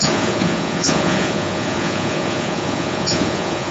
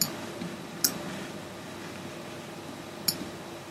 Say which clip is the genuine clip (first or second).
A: second